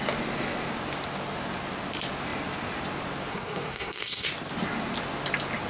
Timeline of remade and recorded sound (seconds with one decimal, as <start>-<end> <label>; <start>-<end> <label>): 0.0-3.3 recorded; 3.3-4.3 remade; 4.3-5.7 recorded